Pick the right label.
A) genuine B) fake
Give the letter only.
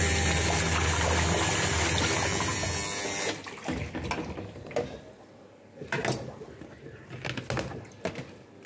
A